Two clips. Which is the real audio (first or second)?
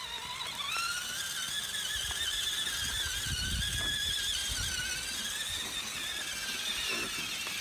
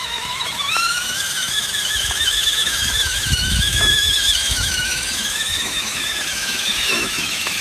first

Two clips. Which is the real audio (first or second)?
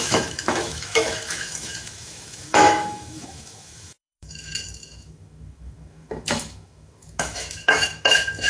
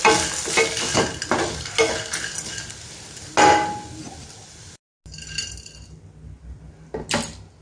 second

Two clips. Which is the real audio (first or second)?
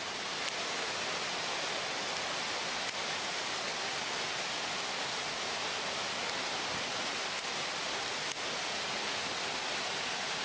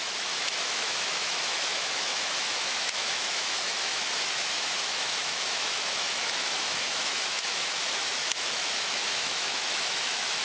first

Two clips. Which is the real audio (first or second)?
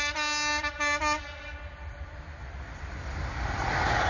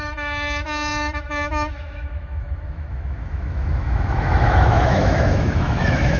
first